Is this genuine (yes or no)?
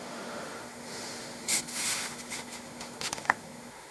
no